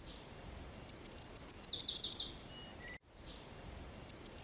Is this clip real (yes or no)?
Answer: yes